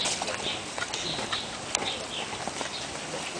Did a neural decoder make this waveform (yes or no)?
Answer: no